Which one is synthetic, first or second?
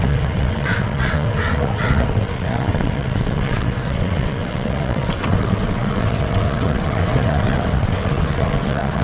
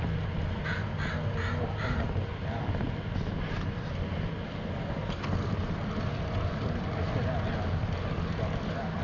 first